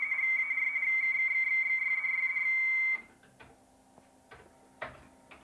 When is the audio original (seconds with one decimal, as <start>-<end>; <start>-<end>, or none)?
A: 0.0-5.4